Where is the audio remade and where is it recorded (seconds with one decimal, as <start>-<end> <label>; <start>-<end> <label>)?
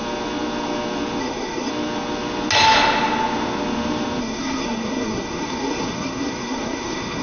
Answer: 0.0-1.2 recorded; 1.2-1.7 remade; 1.7-4.2 recorded; 4.2-7.2 remade